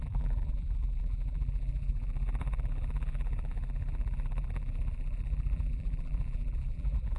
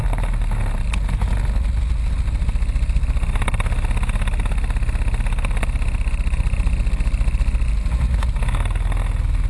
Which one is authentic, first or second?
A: second